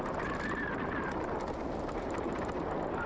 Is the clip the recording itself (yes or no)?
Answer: yes